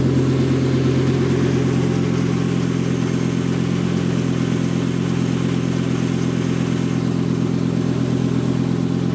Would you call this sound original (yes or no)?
yes